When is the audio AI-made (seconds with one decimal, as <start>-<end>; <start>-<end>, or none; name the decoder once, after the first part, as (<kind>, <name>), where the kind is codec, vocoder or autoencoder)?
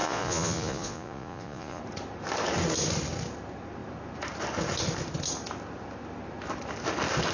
0.0-1.8 (vocoder, Vocos)